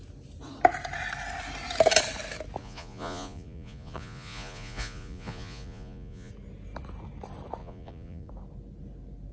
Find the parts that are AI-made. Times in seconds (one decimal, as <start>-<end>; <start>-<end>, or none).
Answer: 2.6-6.3; 7.6-8.3